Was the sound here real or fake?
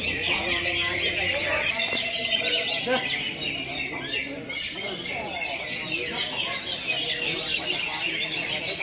real